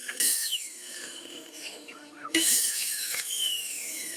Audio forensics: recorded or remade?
remade